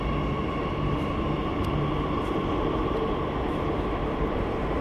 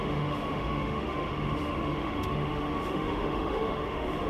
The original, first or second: first